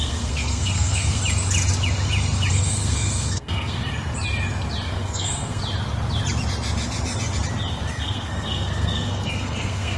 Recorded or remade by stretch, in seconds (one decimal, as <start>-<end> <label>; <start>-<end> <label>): 0.0-1.2 remade; 1.2-2.5 recorded; 2.5-3.8 remade; 3.8-4.9 recorded; 4.9-5.6 remade; 5.6-7.9 recorded; 7.9-10.0 remade